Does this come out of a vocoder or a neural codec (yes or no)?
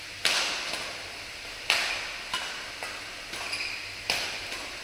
no